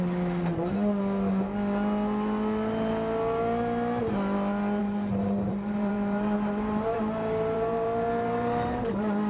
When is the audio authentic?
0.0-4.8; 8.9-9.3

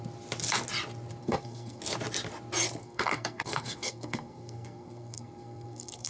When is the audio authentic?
0.0-1.2; 1.8-2.8

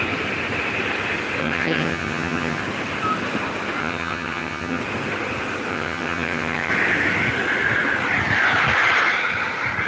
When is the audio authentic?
0.0-1.4; 2.6-3.8; 4.8-5.7; 6.7-9.9

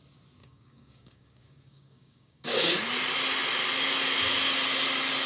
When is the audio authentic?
0.0-0.4; 2.8-5.3

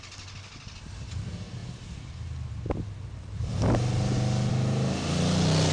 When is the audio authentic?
0.0-5.7

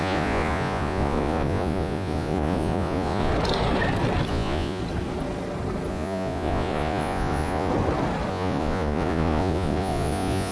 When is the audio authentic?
3.3-4.3; 4.8-5.9; 7.7-8.3

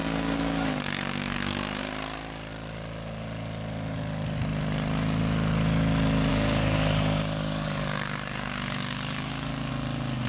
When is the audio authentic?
1.8-6.3; 9.7-10.3

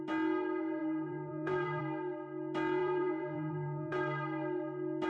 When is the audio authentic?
0.0-0.8; 1.8-2.8; 3.9-5.1